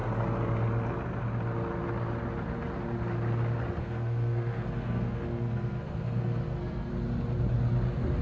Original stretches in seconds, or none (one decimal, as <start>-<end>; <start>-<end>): 0.0-3.8; 6.9-8.2